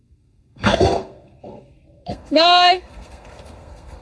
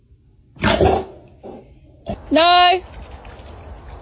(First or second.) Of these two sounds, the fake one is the first